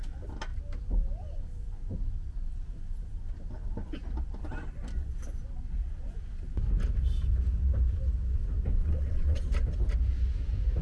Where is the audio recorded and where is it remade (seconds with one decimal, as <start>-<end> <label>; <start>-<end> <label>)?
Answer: 0.0-8.8 recorded; 8.8-9.4 remade; 9.4-10.8 recorded